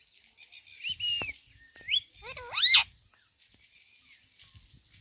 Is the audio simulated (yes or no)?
no